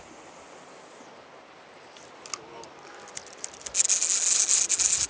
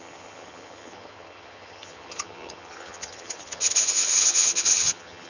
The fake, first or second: second